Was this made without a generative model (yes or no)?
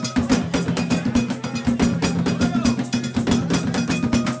yes